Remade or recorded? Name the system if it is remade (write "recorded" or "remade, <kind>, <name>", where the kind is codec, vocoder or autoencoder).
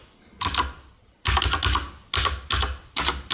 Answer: recorded